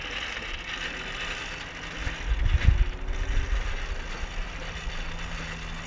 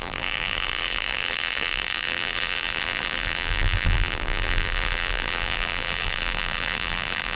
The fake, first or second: second